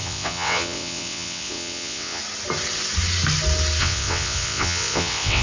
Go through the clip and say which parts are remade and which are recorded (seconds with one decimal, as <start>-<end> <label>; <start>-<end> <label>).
0.0-2.2 remade; 2.2-3.8 recorded; 3.8-5.4 remade